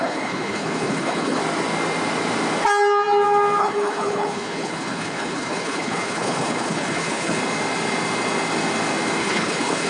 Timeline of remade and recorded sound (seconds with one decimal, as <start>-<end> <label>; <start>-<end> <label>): 0.0-1.4 remade; 1.4-3.6 recorded; 3.6-7.4 remade; 7.4-9.2 recorded; 9.2-9.9 remade